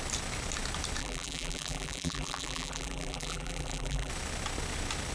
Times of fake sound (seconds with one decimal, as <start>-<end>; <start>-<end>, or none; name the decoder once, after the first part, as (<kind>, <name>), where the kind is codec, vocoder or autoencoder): 1.0-4.1 (vocoder, BigVGAN v2)